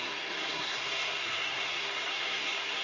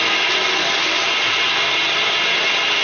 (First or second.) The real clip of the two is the second